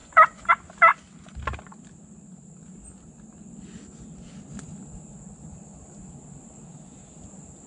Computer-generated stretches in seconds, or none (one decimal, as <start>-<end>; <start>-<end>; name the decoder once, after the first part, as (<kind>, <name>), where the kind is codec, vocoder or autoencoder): 0.0-0.5 (vocoder, Vocos)